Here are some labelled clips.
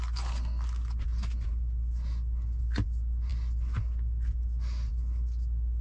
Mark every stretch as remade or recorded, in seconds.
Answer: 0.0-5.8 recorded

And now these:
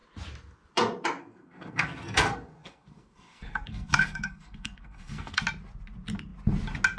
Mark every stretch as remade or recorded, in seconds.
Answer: 0.0-1.2 recorded; 1.2-5.4 remade; 5.4-7.0 recorded

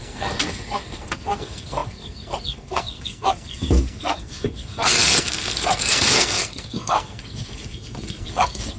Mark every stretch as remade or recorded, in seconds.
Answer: 0.0-8.8 remade